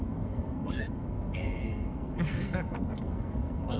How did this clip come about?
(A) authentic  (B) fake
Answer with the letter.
B